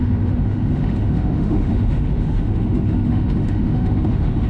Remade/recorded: remade